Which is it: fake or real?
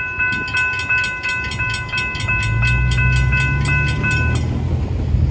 real